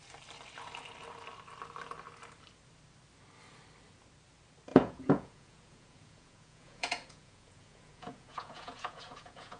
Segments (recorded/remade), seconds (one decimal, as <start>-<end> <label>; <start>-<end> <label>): 0.0-4.7 recorded; 4.7-9.6 remade